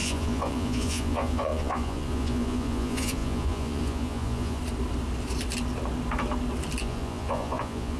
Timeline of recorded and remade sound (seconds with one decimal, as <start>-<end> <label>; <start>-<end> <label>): 0.0-4.6 remade; 4.6-6.8 recorded; 6.8-8.0 remade